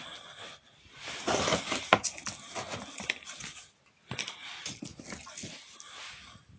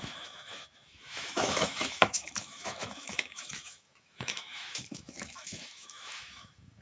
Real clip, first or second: first